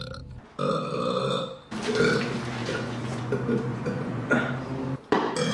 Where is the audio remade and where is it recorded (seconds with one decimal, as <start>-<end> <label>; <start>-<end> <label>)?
0.0-2.6 recorded; 2.6-3.3 remade; 3.3-3.7 recorded; 3.7-4.3 remade; 4.3-5.5 recorded